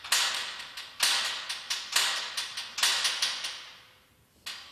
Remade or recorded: recorded